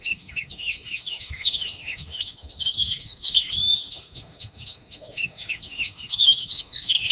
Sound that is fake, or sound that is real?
fake